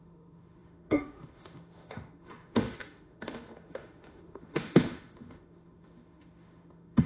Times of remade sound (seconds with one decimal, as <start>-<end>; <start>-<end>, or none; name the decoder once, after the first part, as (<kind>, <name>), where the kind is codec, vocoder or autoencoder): 0.0-7.1 (autoencoder, DAC-VAE)